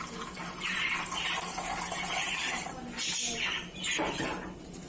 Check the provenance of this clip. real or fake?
fake